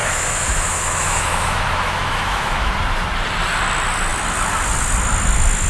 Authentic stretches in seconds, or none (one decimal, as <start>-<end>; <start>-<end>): 2.7-5.7